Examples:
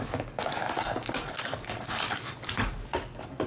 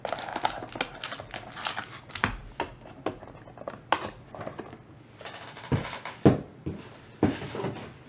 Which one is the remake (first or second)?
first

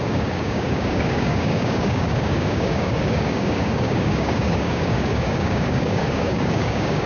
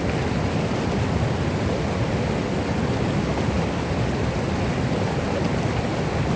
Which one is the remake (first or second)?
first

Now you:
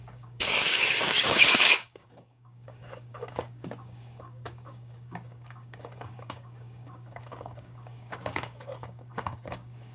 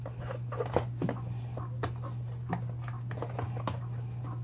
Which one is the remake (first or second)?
first